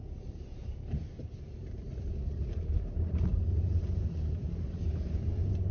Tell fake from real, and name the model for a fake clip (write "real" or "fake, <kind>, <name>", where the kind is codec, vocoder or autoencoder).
fake, vocoder, BigVGAN v2